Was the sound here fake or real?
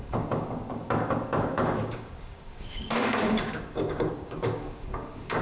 fake